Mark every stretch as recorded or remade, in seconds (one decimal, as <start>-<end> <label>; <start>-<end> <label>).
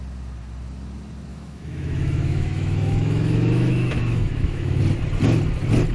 0.0-1.3 recorded; 1.3-4.8 remade; 4.8-5.9 recorded